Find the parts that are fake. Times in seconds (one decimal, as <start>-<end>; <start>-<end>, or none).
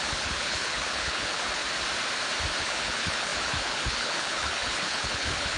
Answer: 0.0-1.6; 2.6-5.6